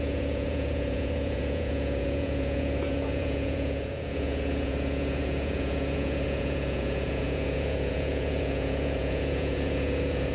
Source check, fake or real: fake